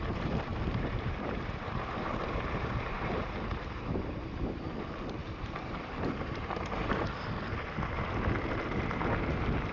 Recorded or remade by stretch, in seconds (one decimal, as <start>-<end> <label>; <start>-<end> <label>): 0.0-0.5 recorded; 0.5-4.7 remade; 4.7-5.2 recorded; 5.2-7.3 remade; 7.3-9.7 recorded